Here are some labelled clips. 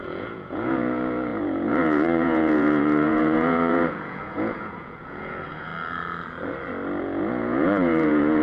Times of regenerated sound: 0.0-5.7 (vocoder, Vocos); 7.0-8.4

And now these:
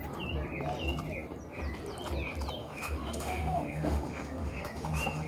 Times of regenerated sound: 2.6-5.3 (autoencoder, DAC-VAE)

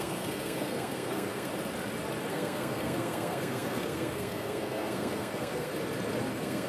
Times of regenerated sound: 0.0-1.5 (codec, SNAC); 2.3-5.7; 6.3-6.7